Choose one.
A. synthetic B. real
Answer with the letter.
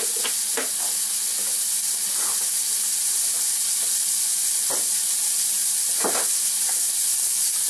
B